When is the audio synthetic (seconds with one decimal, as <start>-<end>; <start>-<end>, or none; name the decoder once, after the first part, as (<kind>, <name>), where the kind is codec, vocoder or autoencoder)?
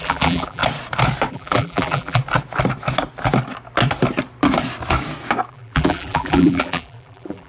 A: 0.0-0.6 (vocoder, BigVGAN v2); 1.3-2.2; 5.5-7.5